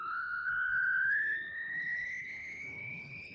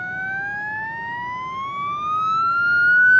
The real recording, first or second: second